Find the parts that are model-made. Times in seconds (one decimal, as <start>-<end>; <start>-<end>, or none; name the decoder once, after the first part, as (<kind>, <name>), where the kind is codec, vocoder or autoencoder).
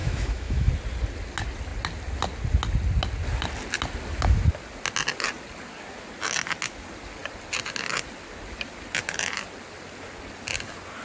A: 0.0-0.7 (autoencoder, DAC-VAE)